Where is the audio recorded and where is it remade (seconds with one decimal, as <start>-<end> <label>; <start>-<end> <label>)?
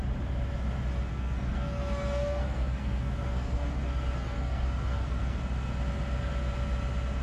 0.0-1.1 recorded; 1.1-5.4 remade; 5.4-7.2 recorded